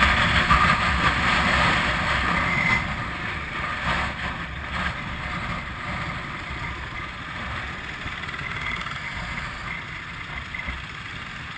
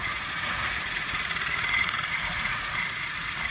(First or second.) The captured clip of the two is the first